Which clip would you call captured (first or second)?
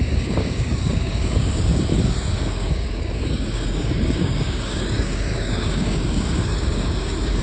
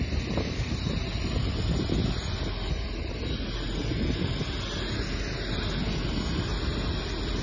second